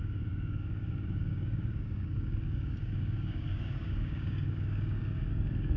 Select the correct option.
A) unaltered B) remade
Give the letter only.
B